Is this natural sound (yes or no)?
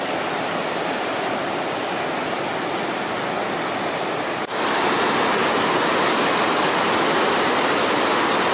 yes